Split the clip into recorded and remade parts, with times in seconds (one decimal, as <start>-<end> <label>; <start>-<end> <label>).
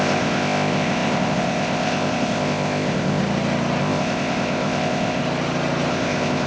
0.0-3.2 remade; 3.2-3.8 recorded; 3.8-5.2 remade; 5.2-5.9 recorded; 5.9-6.5 remade